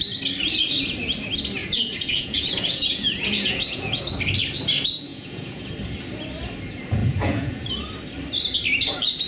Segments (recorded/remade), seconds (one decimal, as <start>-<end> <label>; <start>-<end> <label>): 0.0-1.6 recorded; 1.6-4.0 remade; 4.0-5.1 recorded; 5.1-5.7 remade; 5.7-7.0 recorded; 7.0-7.7 remade; 7.7-9.3 recorded